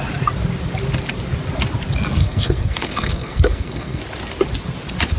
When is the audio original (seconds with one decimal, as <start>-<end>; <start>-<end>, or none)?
0.0-2.2; 4.0-5.2